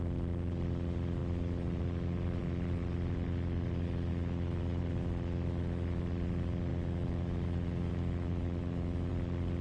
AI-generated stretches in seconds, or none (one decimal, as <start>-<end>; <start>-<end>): 4.1-4.8; 6.7-9.1